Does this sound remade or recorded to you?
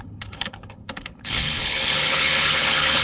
remade